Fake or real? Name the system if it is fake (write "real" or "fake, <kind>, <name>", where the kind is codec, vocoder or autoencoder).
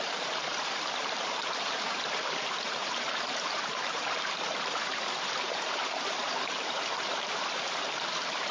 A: fake, vocoder, BigVGAN v2